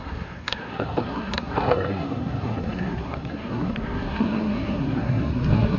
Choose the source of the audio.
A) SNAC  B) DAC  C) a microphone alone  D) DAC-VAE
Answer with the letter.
A